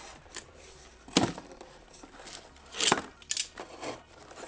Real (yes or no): yes